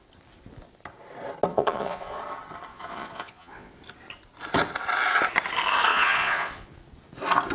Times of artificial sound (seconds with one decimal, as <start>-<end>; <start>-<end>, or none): 1.5-2.2; 2.7-3.7; 5.9-6.7